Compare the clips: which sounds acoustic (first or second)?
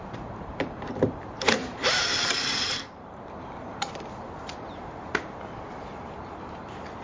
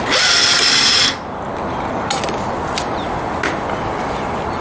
second